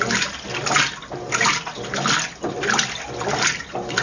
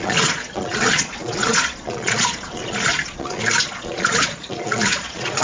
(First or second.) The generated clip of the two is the second